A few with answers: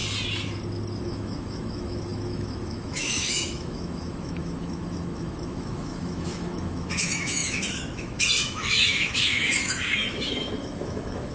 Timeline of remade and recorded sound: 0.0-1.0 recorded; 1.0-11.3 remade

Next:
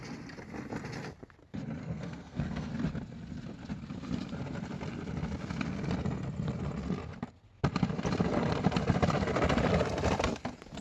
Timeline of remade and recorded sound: 0.0-1.8 recorded; 1.8-2.7 remade; 2.7-10.8 recorded

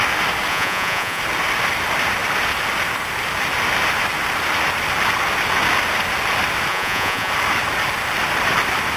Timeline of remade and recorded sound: 0.0-0.5 recorded; 0.5-1.2 remade; 1.2-6.7 recorded; 6.7-7.3 remade; 7.3-9.0 recorded

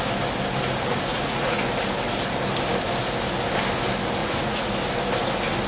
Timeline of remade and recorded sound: 0.0-1.1 recorded; 1.1-1.6 remade; 1.6-4.2 recorded; 4.2-4.7 remade; 4.7-5.7 recorded

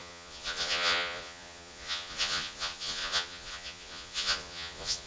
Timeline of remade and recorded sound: 0.0-5.1 remade

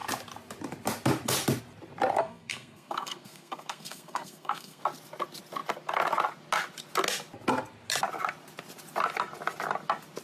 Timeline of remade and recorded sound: 0.0-2.2 recorded; 2.2-4.8 remade; 4.8-10.2 recorded

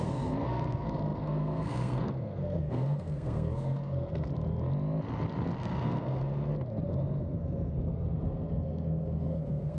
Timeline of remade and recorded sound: 0.0-4.3 remade; 4.3-5.6 recorded; 5.6-6.5 remade; 6.5-7.2 recorded; 7.2-9.8 remade

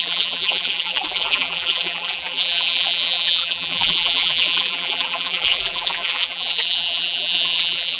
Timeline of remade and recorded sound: 0.0-8.0 remade